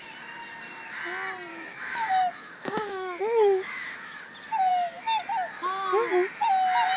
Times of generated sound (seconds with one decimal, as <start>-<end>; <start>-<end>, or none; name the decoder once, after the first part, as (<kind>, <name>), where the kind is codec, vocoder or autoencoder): 1.5-4.2 (autoencoder, DAC-VAE)